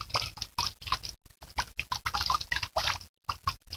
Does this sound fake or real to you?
real